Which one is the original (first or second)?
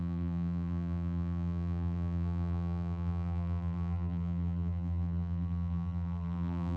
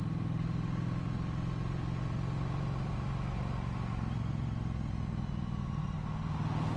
second